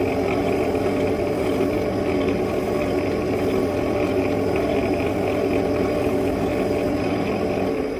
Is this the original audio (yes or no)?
yes